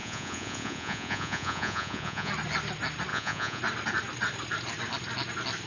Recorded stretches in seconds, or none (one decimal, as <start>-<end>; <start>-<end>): 2.3-3.1; 3.6-5.7